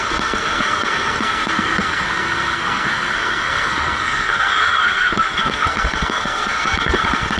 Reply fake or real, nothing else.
fake